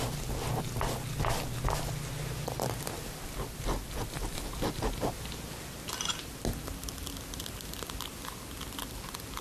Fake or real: real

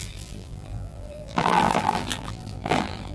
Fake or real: fake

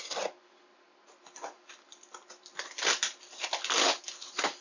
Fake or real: real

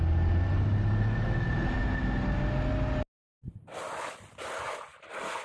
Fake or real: real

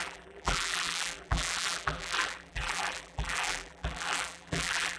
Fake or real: fake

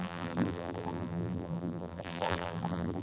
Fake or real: fake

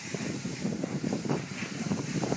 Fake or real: fake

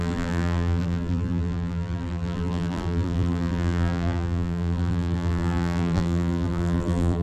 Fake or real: fake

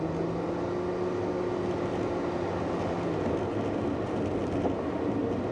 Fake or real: real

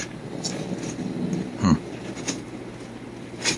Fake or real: real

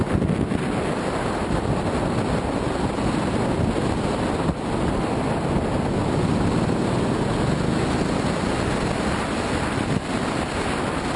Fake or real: real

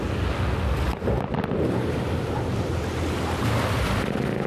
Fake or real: real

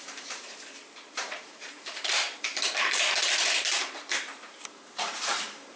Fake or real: fake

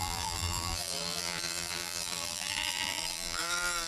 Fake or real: fake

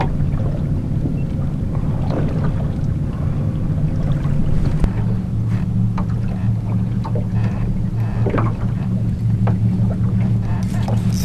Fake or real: real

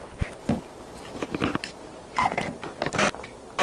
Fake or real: real